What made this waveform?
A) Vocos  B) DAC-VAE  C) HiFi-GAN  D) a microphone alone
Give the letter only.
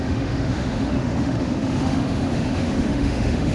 B